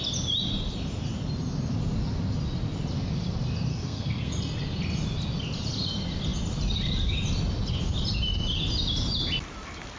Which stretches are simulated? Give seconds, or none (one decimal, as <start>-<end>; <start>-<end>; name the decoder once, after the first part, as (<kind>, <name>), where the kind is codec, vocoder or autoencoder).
3.7-4.3 (codec, SNAC)